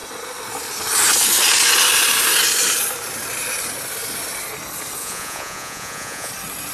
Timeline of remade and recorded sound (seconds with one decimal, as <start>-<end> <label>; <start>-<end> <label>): 0.0-5.0 recorded; 5.0-6.3 remade; 6.3-6.7 recorded